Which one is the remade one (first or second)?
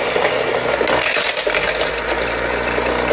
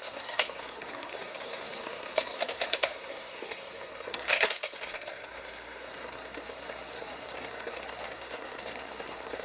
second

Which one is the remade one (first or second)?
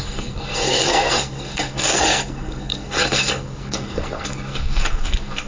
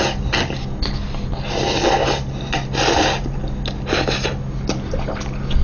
first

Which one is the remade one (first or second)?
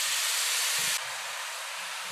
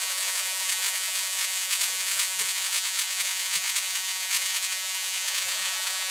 second